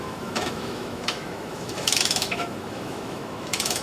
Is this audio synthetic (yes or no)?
yes